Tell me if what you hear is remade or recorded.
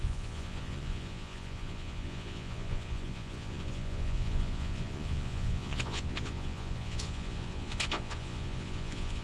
remade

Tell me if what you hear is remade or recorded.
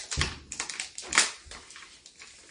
recorded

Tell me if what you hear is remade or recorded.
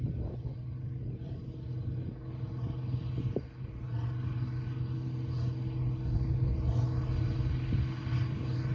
recorded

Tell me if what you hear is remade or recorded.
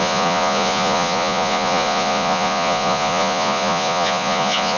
remade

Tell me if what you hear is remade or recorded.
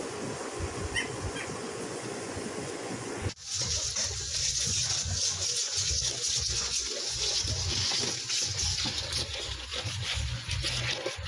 remade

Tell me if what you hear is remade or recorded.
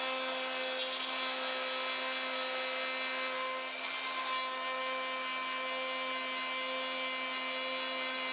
recorded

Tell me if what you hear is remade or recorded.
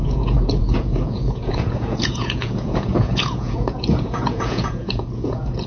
remade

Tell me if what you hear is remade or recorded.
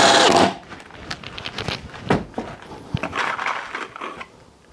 recorded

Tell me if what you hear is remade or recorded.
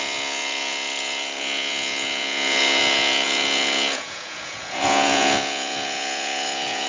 remade